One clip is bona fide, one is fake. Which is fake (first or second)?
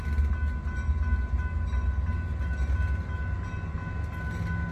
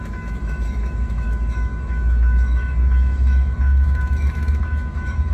second